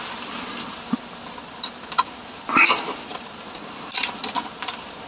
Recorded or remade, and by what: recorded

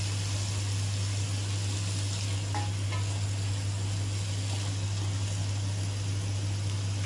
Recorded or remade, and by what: recorded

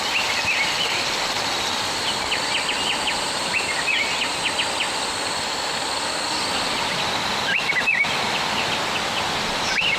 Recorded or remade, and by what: recorded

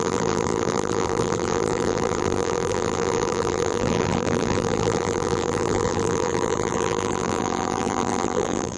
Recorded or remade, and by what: remade, vocoder, BigVGAN v2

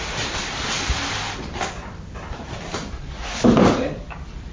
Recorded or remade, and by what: remade, vocoder, BigVGAN v2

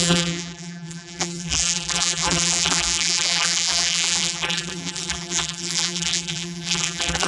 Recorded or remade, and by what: remade, vocoder, BigVGAN v2